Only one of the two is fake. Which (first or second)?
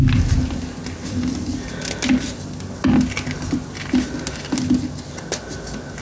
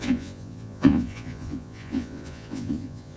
second